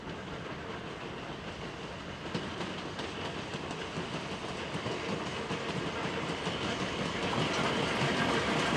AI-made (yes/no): no